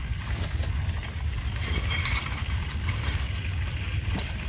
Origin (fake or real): real